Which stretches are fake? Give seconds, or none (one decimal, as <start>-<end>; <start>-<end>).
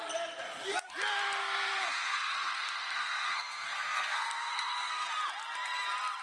1.4-5.1